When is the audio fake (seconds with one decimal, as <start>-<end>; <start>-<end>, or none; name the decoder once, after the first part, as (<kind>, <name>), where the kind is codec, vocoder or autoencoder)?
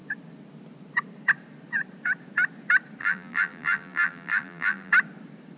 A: 3.0-4.9 (vocoder, BigVGAN v2)